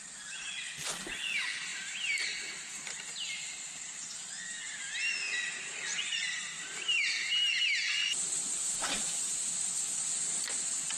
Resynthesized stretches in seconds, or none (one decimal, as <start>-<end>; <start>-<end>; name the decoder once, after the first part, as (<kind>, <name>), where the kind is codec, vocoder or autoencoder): 5.9-7.1 (vocoder, BigVGAN v2); 8.6-9.4